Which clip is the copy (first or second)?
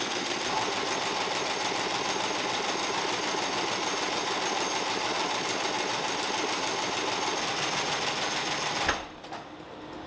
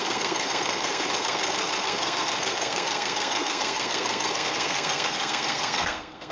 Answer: second